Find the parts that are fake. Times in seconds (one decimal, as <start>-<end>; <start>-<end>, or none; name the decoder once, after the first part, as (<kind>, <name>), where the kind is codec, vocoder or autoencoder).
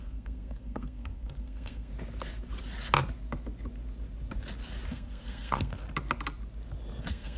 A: 0.0-1.9 (codec, SNAC); 4.9-5.7; 7.0-7.4